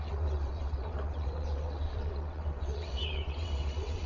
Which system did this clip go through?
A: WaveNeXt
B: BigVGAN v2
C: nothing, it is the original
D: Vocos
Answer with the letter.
A